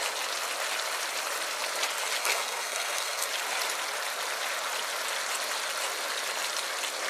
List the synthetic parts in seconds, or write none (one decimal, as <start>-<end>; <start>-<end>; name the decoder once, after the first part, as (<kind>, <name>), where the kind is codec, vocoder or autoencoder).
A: 2.2-3.3 (codec, SNAC)